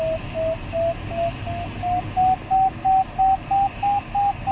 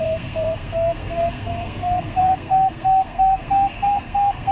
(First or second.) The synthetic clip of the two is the second